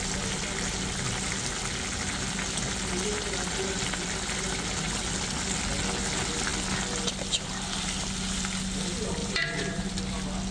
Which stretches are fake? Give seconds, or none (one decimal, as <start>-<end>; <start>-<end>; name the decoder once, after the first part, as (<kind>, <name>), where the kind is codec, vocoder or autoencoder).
9.2-9.9 (vocoder, BigVGAN v2)